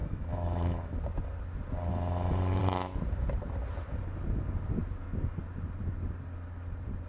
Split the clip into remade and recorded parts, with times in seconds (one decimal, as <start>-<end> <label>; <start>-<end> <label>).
0.0-1.0 remade; 1.0-1.9 recorded; 1.9-2.6 remade; 2.6-7.1 recorded